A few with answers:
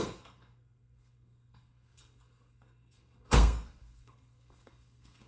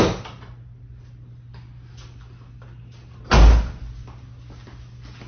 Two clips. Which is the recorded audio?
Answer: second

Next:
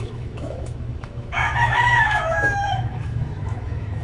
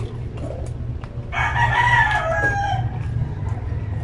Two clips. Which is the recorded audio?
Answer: second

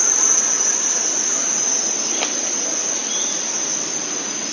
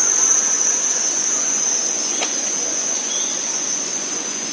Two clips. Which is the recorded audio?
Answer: first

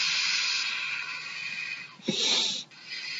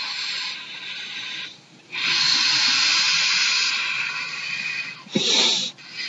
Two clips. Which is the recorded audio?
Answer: first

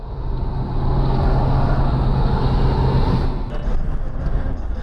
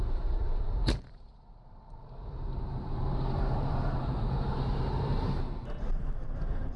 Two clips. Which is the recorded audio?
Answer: first